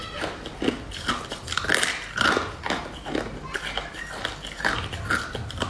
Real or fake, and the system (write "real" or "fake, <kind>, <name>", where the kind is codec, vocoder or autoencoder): real